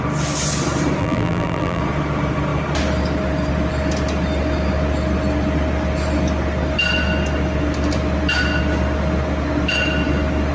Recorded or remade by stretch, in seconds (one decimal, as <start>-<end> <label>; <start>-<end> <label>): 0.0-1.0 recorded; 1.0-1.8 remade; 1.8-10.5 recorded